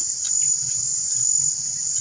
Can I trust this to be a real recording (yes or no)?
yes